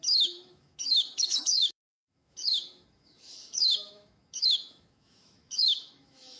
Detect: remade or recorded remade